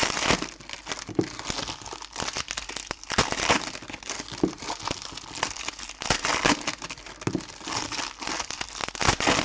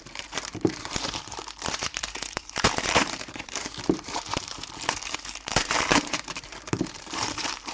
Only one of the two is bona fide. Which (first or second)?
first